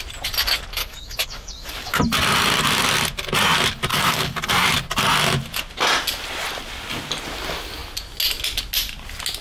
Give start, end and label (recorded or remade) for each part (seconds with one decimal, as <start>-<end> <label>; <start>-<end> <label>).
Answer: 0.0-0.8 recorded; 0.8-2.0 remade; 2.0-3.9 recorded; 3.9-4.5 remade; 4.5-9.4 recorded